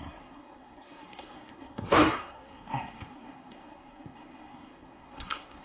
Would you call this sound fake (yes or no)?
yes